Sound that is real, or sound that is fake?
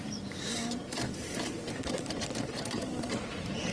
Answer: fake